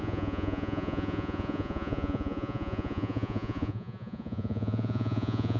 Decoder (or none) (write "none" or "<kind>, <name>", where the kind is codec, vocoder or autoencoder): vocoder, Vocos